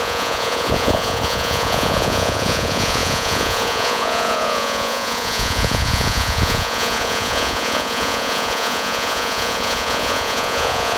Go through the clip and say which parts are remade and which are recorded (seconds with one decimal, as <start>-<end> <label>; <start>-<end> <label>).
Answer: 0.0-11.0 remade